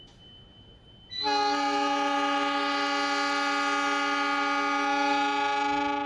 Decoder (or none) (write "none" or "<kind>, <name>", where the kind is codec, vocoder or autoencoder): none